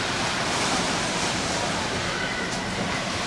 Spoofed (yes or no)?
yes